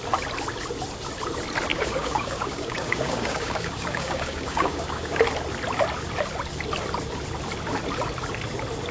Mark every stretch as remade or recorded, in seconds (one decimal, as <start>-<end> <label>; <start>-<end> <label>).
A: 0.0-1.7 recorded; 1.7-5.2 remade; 5.2-8.9 recorded